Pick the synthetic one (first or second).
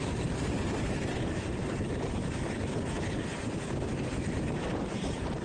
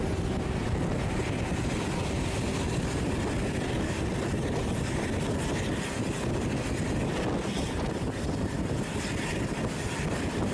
first